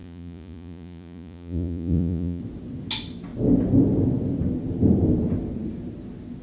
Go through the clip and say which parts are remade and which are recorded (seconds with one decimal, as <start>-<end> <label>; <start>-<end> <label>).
0.0-2.4 remade; 2.4-6.4 recorded